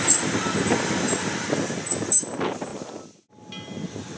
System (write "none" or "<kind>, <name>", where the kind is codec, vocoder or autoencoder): none